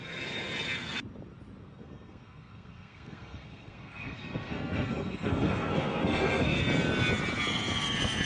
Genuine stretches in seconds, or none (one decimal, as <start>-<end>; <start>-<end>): 0.0-1.6; 6.6-8.3